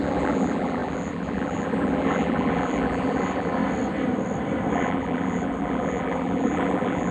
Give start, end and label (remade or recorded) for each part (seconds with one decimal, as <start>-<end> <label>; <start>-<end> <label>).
0.0-3.6 remade; 3.6-4.7 recorded; 4.7-7.1 remade